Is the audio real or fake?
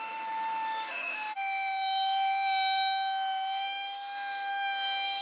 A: fake